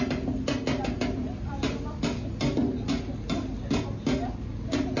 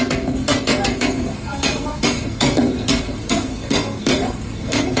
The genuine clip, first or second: first